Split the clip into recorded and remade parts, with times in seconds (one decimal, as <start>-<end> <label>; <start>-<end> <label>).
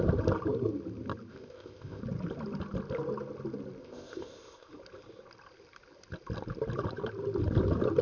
0.0-1.3 recorded; 1.3-2.0 remade; 2.0-3.8 recorded; 3.8-4.7 remade; 4.7-8.0 recorded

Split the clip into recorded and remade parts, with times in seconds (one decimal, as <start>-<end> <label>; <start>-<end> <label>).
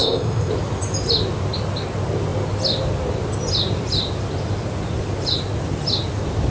0.0-0.5 remade; 0.5-6.5 recorded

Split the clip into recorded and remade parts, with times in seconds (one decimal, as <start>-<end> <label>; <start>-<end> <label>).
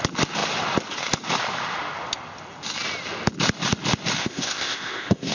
0.0-4.2 recorded; 4.2-5.3 remade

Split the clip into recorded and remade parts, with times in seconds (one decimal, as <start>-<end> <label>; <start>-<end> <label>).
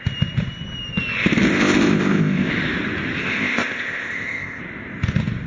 0.0-1.5 recorded; 1.5-2.5 remade; 2.5-3.2 recorded; 3.2-4.6 remade; 4.6-5.5 recorded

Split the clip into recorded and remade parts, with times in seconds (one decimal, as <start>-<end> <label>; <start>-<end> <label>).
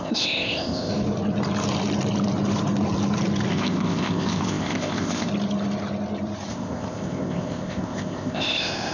0.0-0.9 remade; 0.9-3.5 recorded; 3.5-5.3 remade; 5.3-6.5 recorded; 6.5-8.9 remade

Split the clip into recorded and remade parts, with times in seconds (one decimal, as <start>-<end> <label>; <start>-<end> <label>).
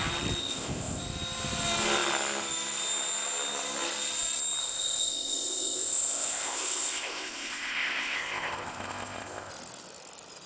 0.0-0.4 recorded; 0.4-1.0 remade; 1.0-4.6 recorded; 4.6-9.5 remade; 9.5-10.5 recorded